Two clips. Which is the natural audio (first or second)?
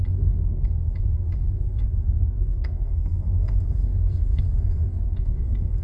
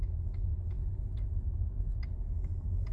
second